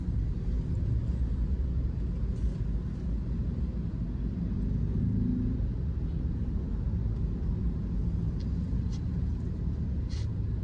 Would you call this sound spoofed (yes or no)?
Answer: no